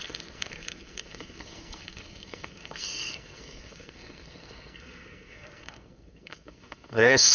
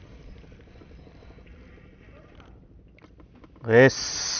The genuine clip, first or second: second